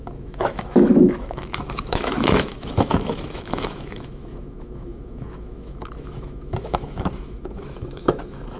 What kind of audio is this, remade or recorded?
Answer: remade